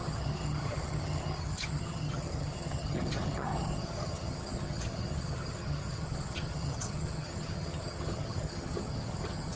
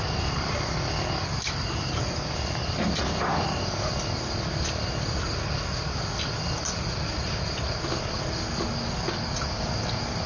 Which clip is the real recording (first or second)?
second